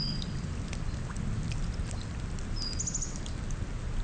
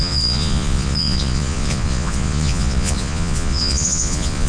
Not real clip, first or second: second